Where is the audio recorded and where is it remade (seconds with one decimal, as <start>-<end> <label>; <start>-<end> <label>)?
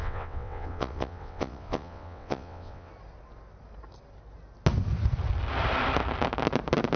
0.0-2.9 remade; 2.9-7.0 recorded